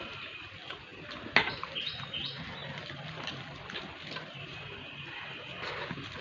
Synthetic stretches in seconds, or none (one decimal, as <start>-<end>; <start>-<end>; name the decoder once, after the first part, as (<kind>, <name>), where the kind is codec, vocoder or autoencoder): 2.6-3.8 (vocoder, BigVGAN v2)